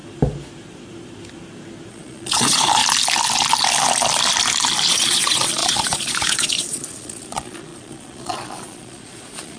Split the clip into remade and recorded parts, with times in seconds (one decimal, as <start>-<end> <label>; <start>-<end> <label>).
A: 0.0-1.9 recorded; 1.9-2.8 remade; 2.8-4.9 recorded; 4.9-9.6 remade